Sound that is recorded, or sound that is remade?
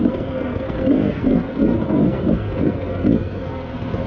remade